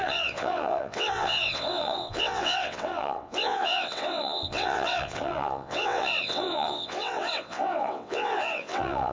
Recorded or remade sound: remade